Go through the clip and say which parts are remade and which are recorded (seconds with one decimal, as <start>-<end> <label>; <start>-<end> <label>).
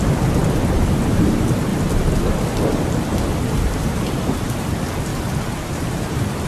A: 0.0-1.7 remade; 1.7-3.4 recorded; 3.4-5.1 remade; 5.1-5.6 recorded; 5.6-6.5 remade